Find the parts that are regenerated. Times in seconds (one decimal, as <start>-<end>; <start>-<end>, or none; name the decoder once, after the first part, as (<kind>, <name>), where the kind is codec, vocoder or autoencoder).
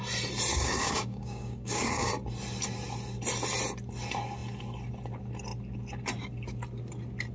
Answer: 0.5-2.1 (codec, DAC)